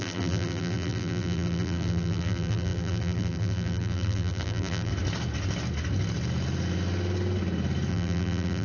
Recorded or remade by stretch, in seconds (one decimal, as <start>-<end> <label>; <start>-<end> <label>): 0.0-4.9 remade; 4.9-7.9 recorded; 7.9-8.6 remade